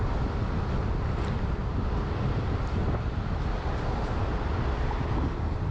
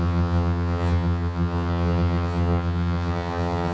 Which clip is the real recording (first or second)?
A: first